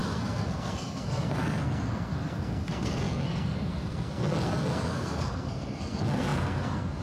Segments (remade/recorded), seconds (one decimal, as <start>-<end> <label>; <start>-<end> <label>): 0.0-7.0 remade